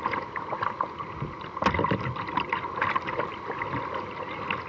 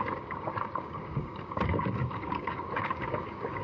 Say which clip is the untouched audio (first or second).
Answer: first